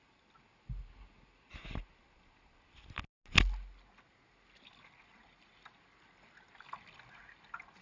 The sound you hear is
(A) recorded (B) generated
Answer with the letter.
A